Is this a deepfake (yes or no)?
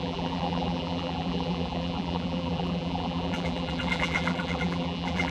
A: yes